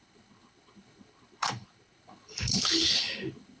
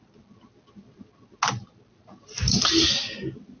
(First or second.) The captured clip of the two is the second